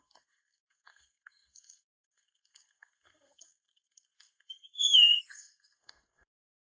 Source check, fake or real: fake